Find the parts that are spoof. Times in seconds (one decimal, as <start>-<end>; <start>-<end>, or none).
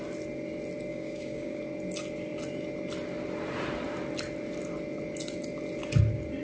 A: 0.9-1.6